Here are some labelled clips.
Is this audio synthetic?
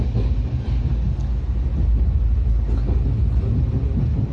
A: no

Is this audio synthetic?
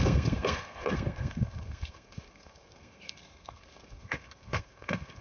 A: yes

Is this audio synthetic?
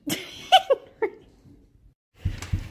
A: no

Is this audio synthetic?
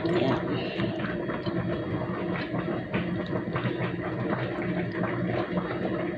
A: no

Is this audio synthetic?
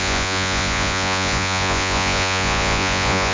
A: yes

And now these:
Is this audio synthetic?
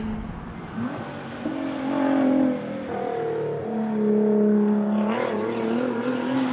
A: no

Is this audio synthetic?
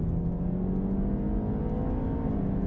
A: no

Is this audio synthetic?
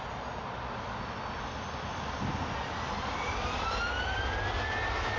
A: no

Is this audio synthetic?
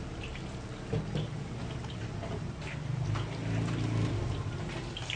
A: no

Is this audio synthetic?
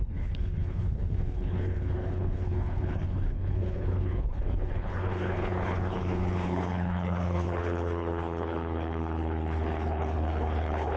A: yes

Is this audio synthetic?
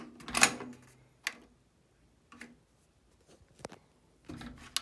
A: no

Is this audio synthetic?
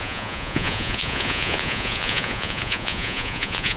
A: yes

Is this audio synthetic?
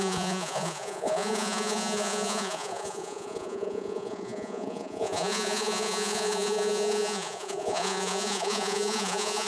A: yes